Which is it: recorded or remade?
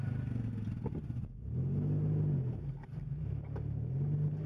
recorded